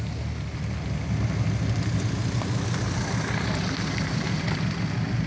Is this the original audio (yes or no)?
yes